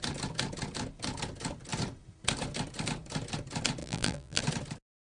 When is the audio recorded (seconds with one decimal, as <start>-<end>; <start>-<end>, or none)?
0.0-3.8; 4.4-5.0